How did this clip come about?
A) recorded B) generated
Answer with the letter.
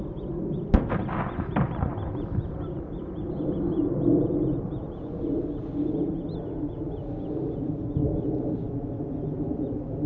A